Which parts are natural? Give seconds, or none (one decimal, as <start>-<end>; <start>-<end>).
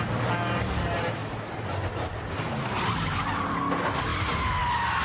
0.0-5.0